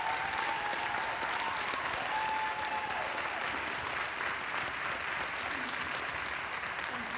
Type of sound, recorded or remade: recorded